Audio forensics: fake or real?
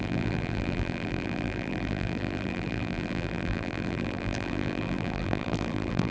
fake